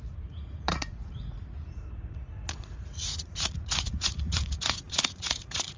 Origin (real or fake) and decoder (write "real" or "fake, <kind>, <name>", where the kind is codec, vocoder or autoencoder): fake, vocoder, Vocos